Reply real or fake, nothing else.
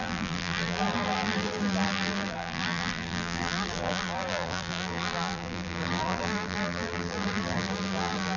fake